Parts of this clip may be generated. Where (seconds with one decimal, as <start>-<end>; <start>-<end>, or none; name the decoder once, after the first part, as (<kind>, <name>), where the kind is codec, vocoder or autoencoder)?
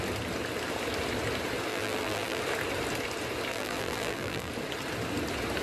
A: 1.7-2.4 (vocoder, BigVGAN v2); 3.5-4.5